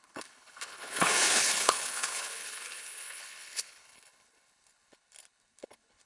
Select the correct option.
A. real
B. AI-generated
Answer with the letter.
B